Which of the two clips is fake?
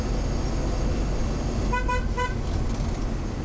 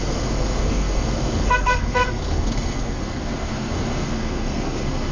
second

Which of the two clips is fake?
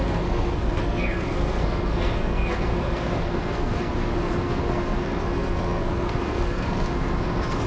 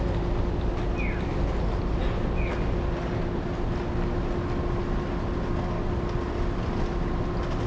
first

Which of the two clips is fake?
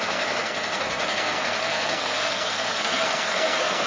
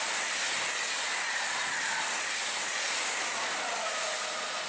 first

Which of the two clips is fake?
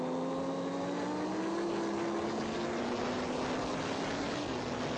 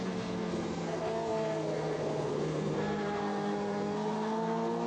second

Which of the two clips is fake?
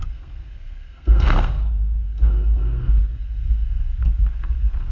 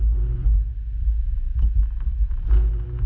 first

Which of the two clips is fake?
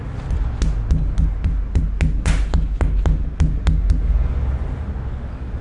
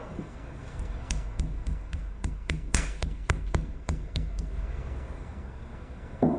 second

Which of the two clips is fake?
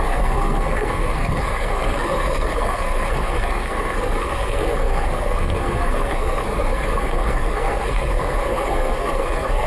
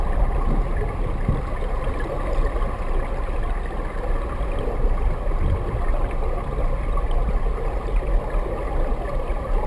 first